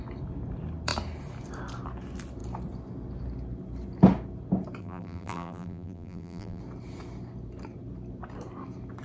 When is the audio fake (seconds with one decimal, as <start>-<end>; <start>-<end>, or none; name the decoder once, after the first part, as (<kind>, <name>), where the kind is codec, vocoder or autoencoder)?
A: 4.8-6.6 (vocoder, BigVGAN v2)